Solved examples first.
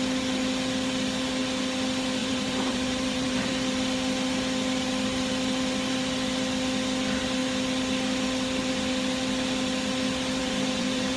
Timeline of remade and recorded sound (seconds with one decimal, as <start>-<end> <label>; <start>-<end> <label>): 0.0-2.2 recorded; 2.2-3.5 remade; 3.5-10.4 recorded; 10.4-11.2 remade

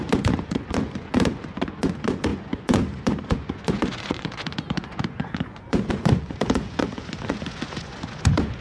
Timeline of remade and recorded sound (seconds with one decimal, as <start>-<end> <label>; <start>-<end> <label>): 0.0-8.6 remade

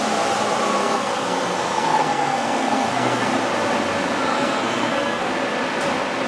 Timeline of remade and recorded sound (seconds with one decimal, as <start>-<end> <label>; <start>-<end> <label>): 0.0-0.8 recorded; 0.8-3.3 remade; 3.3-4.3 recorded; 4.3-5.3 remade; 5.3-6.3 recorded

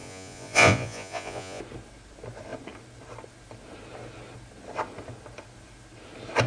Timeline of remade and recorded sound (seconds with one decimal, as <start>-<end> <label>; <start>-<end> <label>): 0.0-1.6 remade; 1.6-6.5 recorded

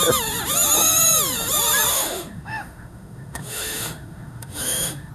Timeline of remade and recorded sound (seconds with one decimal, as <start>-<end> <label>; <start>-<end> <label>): 0.0-1.9 recorded; 1.9-5.1 remade

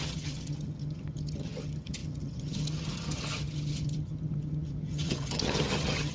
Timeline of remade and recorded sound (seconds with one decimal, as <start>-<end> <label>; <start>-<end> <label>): 0.0-6.1 remade

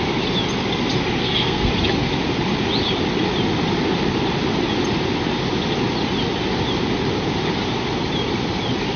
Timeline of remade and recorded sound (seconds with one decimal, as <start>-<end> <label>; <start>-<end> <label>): 0.0-1.2 recorded; 1.2-1.7 remade; 1.7-9.0 recorded

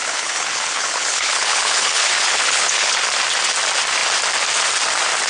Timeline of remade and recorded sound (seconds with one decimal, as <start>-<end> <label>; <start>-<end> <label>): 0.0-3.0 remade; 3.0-5.3 recorded